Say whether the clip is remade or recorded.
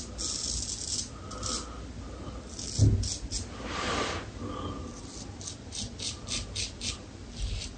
recorded